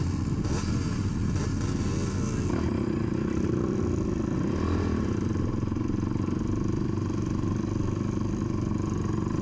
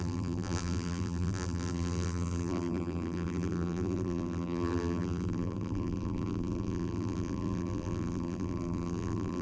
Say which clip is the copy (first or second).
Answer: second